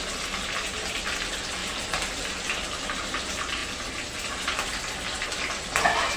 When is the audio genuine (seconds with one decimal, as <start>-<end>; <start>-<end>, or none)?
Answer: 0.0-6.2